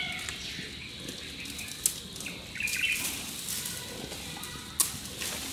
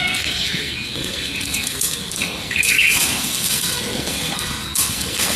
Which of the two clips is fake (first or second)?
second